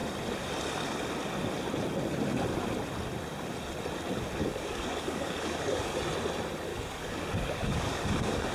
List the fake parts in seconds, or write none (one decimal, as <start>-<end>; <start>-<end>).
4.4-6.0; 6.7-8.5